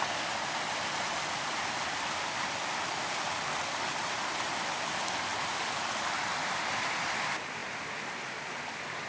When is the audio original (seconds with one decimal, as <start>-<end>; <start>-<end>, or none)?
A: 0.0-9.1